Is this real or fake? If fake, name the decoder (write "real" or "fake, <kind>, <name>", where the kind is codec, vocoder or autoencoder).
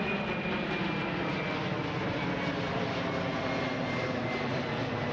real